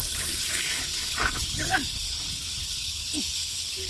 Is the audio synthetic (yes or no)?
yes